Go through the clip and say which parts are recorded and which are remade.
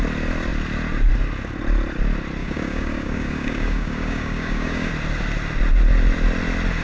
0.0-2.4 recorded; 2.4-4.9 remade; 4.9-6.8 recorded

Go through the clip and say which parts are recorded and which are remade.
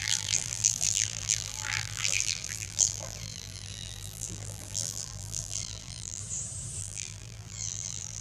0.0-6.2 remade; 6.2-6.8 recorded; 6.8-8.2 remade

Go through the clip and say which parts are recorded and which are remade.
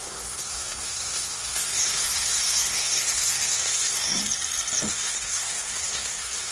0.0-4.2 remade; 4.2-4.9 recorded; 4.9-6.5 remade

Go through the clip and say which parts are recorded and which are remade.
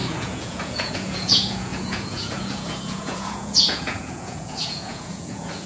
0.0-5.7 remade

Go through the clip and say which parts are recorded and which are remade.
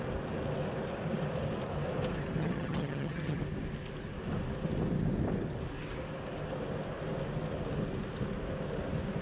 0.0-2.4 recorded; 2.4-3.4 remade; 3.4-9.2 recorded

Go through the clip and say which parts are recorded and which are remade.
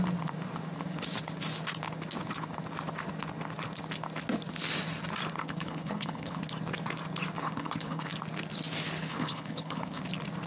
0.0-5.4 recorded; 5.4-6.4 remade; 6.4-7.4 recorded; 7.4-8.1 remade; 8.1-9.0 recorded; 9.0-10.0 remade; 10.0-10.5 recorded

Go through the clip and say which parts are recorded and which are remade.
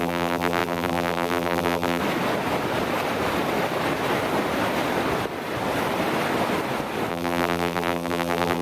0.0-2.0 remade; 2.0-7.1 recorded; 7.1-8.6 remade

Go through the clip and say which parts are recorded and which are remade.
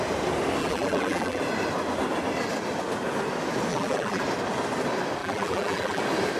0.0-0.6 recorded; 0.6-1.4 remade; 1.4-3.7 recorded; 3.7-4.2 remade; 4.2-5.2 recorded; 5.2-6.0 remade; 6.0-6.4 recorded